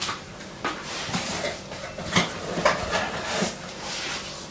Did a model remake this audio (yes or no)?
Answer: no